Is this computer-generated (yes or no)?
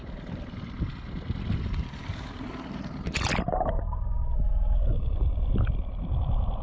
no